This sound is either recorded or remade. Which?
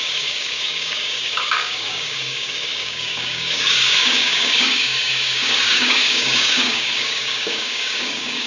remade